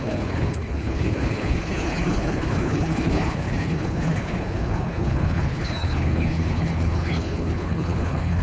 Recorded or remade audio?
remade